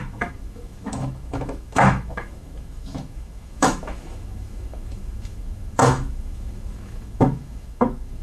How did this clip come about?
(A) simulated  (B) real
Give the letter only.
A